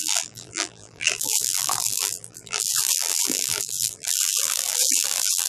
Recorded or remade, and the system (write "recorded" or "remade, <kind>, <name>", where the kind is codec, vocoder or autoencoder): remade, vocoder, BigVGAN v2